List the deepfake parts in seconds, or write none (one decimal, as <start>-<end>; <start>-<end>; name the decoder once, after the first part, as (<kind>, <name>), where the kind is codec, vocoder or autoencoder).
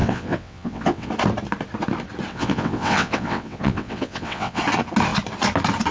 0.0-1.1 (vocoder, WaveNeXt); 2.3-4.6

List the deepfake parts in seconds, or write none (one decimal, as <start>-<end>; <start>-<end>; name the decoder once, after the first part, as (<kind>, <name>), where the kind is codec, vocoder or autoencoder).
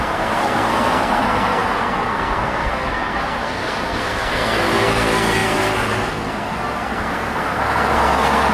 0.0-8.5 (codec, SNAC)